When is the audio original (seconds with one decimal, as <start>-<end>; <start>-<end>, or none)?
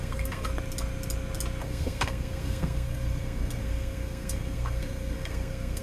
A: 0.5-1.6